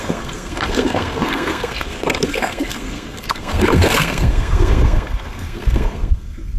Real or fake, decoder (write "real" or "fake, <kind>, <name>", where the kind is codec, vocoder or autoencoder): fake, codec, SNAC